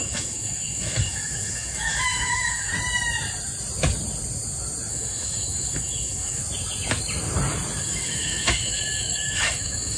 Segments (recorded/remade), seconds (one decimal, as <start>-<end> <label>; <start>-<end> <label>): 0.0-2.7 remade; 2.7-4.9 recorded; 4.9-6.4 remade; 6.4-7.8 recorded; 7.8-10.0 remade